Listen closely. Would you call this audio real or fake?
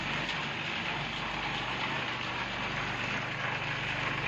real